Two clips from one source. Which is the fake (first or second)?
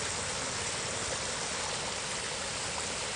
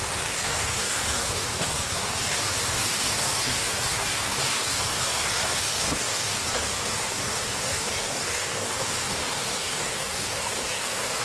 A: second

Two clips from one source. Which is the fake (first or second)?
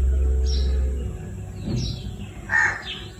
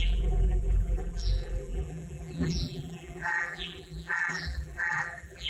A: second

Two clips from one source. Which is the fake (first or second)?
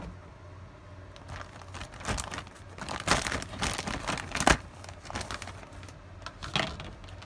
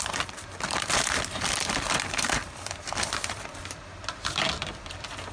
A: second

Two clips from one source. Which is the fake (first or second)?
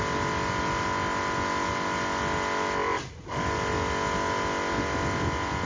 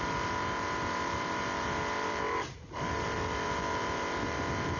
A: second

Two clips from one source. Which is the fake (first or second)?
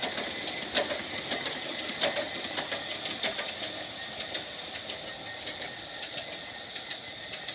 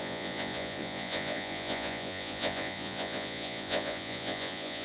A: second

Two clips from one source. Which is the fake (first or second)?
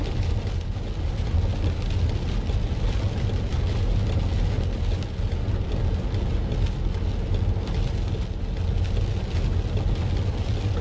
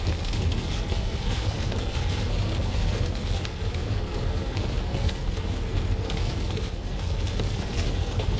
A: second